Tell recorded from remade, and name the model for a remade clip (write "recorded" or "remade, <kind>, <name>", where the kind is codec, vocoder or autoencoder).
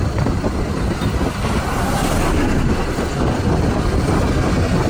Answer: recorded